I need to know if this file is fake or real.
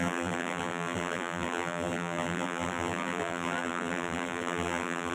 fake